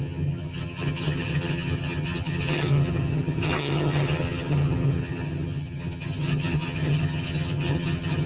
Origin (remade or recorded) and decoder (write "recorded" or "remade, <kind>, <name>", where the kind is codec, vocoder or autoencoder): remade, vocoder, HiFi-GAN